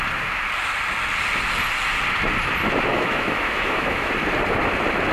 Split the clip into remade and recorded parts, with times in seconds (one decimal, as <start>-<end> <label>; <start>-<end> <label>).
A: 0.0-2.9 recorded; 2.9-4.1 remade; 4.1-5.1 recorded